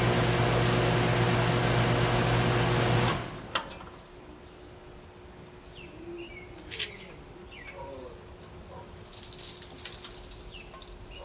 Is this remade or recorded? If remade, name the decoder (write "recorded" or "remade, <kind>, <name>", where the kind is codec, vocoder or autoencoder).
recorded